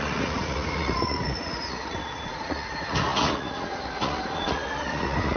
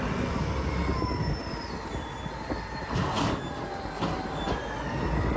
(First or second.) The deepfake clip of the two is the first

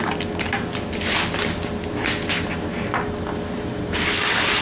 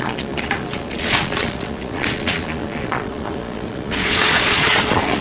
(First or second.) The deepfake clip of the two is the second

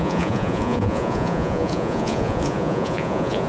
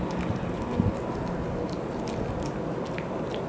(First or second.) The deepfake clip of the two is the first